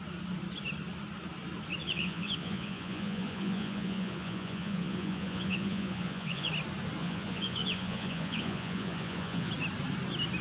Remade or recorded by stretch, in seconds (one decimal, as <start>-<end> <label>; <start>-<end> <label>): 0.0-1.8 recorded; 1.8-6.5 remade; 6.5-7.0 recorded; 7.0-9.5 remade; 9.5-10.4 recorded